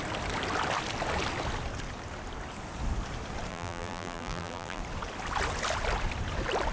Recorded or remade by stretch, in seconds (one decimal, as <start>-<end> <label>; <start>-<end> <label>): 0.0-3.5 recorded; 3.5-4.8 remade; 4.8-6.7 recorded